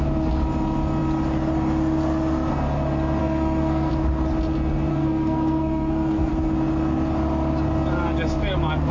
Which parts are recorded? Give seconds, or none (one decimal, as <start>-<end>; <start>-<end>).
0.0-3.2; 3.9-4.9; 6.3-8.9